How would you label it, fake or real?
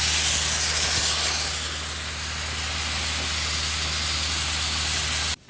real